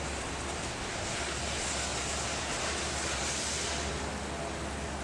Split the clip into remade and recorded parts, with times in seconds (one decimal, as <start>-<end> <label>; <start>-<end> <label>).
0.0-0.9 recorded; 0.9-1.4 remade; 1.4-1.9 recorded; 1.9-3.9 remade; 3.9-5.0 recorded